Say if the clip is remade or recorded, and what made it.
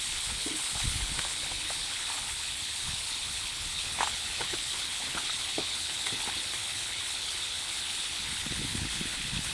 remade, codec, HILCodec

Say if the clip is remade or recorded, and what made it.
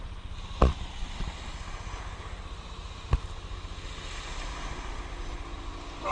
recorded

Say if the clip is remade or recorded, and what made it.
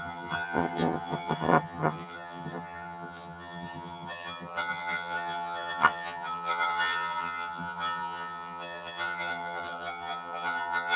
remade, vocoder, HiFi-GAN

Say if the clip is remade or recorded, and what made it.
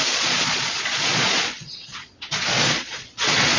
remade, vocoder, Vocos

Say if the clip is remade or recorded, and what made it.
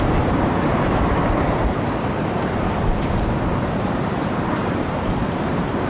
remade, vocoder, BigVGAN v2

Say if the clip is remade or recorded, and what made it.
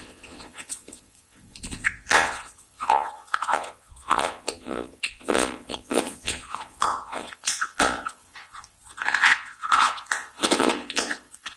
remade, vocoder, Vocos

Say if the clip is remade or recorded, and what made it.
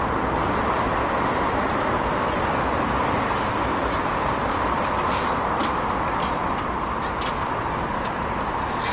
recorded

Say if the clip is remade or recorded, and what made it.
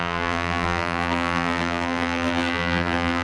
remade, vocoder, BigVGAN v2